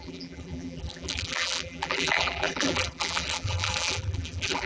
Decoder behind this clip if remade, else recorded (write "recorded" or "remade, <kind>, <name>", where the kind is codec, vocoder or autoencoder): remade, vocoder, BigVGAN v2